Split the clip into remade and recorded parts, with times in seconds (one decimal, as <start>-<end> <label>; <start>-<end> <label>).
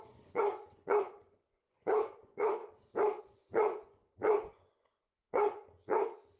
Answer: 0.0-2.6 remade; 2.6-3.2 recorded; 3.2-6.4 remade